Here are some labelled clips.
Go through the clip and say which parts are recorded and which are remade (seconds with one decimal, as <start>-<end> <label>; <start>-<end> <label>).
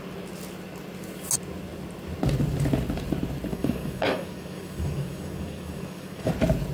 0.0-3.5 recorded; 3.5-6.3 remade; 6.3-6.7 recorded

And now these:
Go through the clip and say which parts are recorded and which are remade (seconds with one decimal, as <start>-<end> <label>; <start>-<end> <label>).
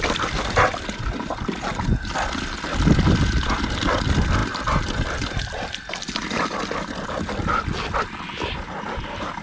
0.0-9.4 recorded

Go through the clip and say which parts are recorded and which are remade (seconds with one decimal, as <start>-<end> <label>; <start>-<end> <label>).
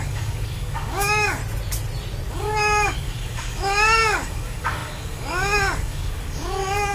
0.0-1.4 remade; 1.4-2.3 recorded; 2.3-6.9 remade